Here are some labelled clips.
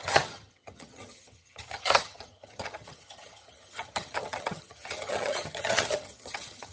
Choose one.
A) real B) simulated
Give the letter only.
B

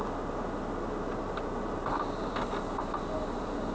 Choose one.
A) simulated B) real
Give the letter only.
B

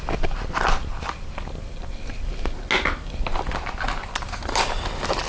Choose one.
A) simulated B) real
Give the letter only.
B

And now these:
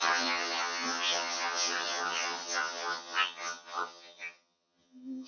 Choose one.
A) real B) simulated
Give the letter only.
B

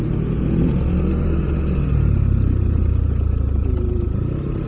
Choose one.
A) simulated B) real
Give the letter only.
B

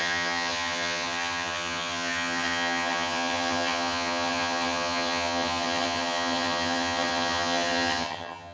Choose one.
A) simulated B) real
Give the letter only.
A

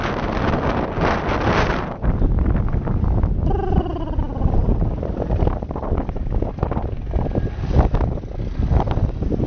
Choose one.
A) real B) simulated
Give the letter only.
A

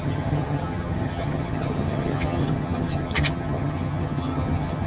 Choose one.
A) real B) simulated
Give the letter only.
B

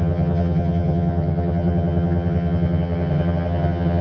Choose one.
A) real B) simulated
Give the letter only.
B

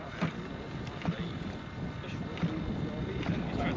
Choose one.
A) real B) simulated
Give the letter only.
A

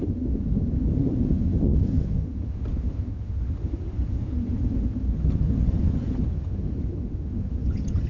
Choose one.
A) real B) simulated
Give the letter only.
B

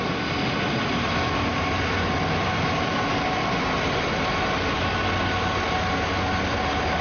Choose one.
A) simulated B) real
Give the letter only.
B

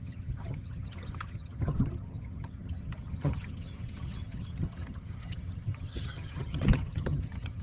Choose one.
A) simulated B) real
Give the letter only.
A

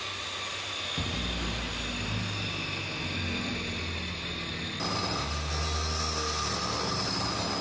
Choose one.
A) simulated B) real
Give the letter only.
B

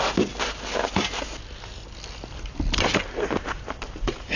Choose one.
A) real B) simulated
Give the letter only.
A